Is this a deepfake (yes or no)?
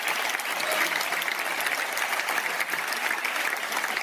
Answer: no